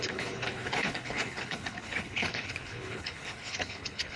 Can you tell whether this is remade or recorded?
remade